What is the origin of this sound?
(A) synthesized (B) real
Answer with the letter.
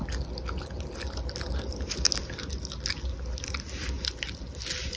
B